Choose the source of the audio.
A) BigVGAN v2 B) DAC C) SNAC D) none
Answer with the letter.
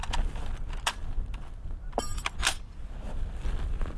D